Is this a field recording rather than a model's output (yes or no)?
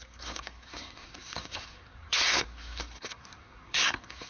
no